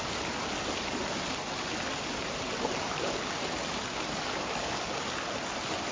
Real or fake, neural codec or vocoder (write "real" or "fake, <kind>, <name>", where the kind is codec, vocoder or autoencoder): real